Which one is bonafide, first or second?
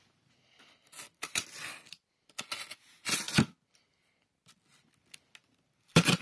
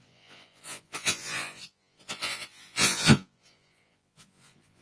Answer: first